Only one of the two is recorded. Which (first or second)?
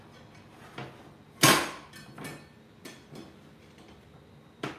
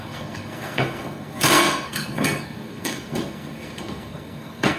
first